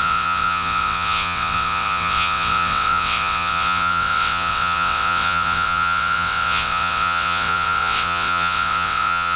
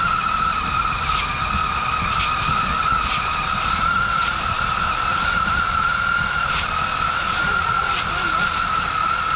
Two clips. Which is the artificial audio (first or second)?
first